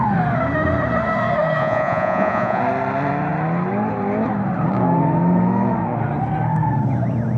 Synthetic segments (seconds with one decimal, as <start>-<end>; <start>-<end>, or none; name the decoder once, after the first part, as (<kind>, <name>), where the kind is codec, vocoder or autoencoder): 1.6-2.6 (vocoder, Vocos)